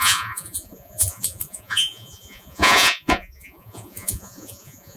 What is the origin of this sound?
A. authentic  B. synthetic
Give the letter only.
B